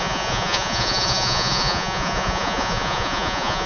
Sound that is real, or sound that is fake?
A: fake